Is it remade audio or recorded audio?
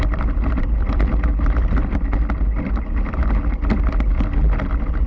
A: recorded